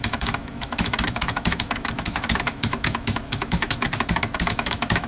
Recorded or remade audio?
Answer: remade